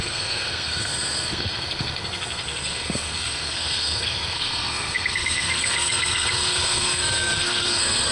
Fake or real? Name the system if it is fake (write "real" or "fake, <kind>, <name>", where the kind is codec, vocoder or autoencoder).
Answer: fake, codec, SNAC